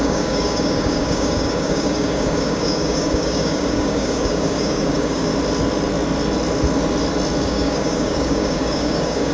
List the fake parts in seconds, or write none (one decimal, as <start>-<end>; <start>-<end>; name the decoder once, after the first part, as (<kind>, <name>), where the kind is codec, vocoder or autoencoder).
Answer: 0.0-5.3 (codec, DAC); 7.4-9.3